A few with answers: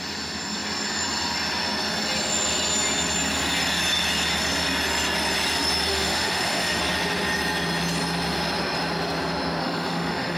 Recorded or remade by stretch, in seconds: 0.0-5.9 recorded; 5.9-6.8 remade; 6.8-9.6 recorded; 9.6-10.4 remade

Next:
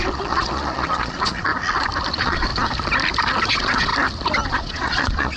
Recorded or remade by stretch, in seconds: 0.0-1.5 remade; 1.5-2.1 recorded; 2.1-2.5 remade; 2.5-3.5 recorded; 3.5-3.9 remade; 3.9-4.5 recorded; 4.5-5.4 remade

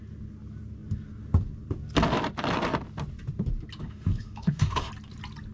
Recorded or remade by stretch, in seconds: 0.0-3.8 recorded; 3.8-4.9 remade; 4.9-5.5 recorded

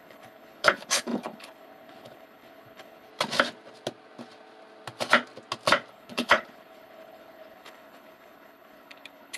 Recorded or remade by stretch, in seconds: 0.0-3.1 remade; 3.1-5.9 recorded; 5.9-9.4 remade

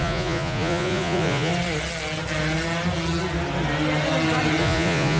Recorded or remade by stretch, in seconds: 0.0-1.5 remade; 1.5-4.6 recorded; 4.6-5.2 remade

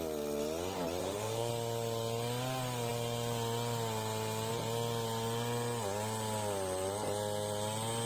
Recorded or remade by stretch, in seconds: 0.0-1.0 recorded; 1.0-1.5 remade; 1.5-8.1 recorded

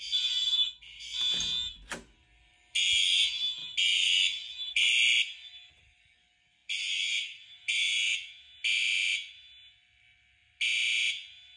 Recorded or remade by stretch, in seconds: 0.0-11.6 recorded